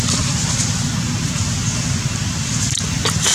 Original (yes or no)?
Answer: yes